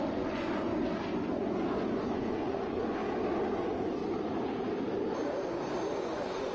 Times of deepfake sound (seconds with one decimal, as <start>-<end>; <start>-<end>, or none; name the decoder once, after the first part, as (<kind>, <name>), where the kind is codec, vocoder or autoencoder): 0.0-0.7 (vocoder, Vocos); 1.3-3.0; 3.6-4.0; 6.0-6.5